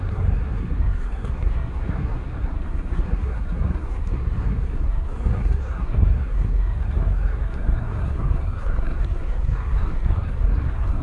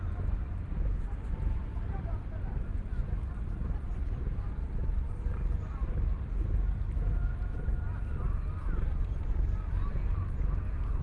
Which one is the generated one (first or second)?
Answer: first